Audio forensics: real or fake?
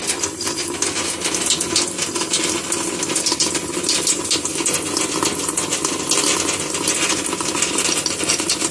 real